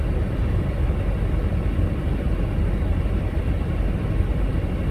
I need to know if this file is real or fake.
real